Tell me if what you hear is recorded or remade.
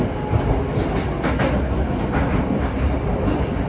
recorded